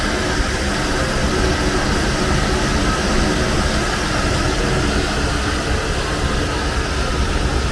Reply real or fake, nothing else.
real